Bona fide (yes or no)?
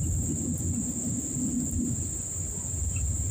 yes